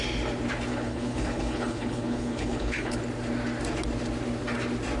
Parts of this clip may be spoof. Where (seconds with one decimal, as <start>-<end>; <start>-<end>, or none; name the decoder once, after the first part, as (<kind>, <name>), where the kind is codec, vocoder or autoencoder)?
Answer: 0.7-3.0 (codec, HILCodec)